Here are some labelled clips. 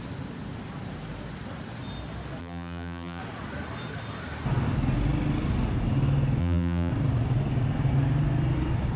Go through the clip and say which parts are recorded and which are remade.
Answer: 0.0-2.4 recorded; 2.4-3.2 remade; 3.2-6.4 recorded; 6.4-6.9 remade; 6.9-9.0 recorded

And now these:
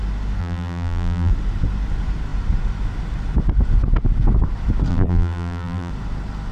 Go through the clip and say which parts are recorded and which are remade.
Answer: 0.0-0.4 recorded; 0.4-1.3 remade; 1.3-4.9 recorded; 4.9-5.9 remade; 5.9-6.5 recorded